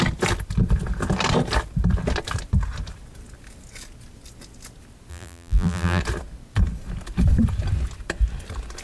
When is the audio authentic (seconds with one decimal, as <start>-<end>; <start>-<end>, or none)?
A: 0.0-5.1; 6.0-8.8